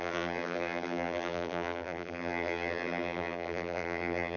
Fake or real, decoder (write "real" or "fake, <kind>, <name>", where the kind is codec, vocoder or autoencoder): fake, vocoder, BigVGAN v2